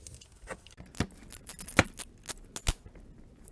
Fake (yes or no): no